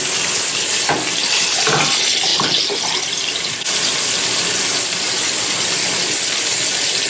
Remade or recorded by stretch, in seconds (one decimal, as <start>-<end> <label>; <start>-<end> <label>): 0.0-7.1 recorded

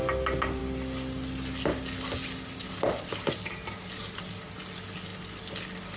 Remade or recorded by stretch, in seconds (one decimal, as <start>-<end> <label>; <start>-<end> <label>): 0.0-6.0 recorded

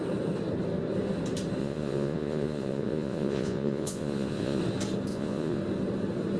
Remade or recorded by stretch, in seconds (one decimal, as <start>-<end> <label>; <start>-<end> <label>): 0.0-1.6 recorded; 1.6-4.6 remade; 4.6-5.1 recorded; 5.1-5.6 remade; 5.6-6.4 recorded

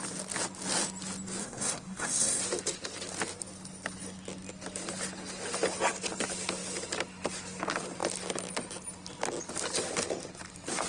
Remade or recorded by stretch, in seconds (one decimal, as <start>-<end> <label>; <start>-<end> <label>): 0.0-1.4 recorded; 1.4-2.4 remade; 2.4-10.9 recorded

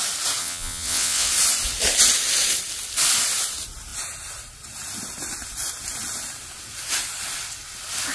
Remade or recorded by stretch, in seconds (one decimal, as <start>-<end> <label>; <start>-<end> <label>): 0.0-0.4 recorded; 0.4-1.3 remade; 1.3-8.1 recorded

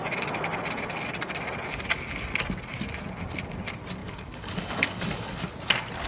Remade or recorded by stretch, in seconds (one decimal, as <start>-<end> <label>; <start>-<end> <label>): 0.0-4.0 recorded; 4.0-5.5 remade; 5.5-6.1 recorded

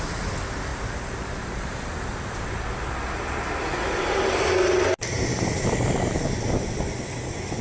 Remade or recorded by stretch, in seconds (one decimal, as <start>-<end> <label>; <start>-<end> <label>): 0.0-0.7 recorded; 0.7-1.9 remade; 1.9-5.3 recorded; 5.3-6.5 remade; 6.5-7.6 recorded

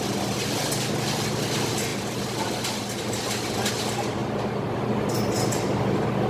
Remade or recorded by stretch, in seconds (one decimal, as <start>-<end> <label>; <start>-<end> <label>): 0.0-6.3 recorded